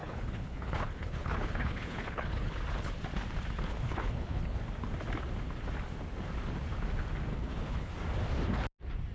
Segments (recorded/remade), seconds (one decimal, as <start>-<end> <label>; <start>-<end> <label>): 0.0-2.6 remade; 2.6-3.7 recorded; 3.7-4.6 remade; 4.6-7.3 recorded; 7.3-7.9 remade; 7.9-9.1 recorded